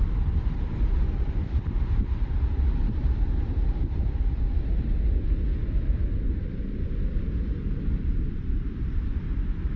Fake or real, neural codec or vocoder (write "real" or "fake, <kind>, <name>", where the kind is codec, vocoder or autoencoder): real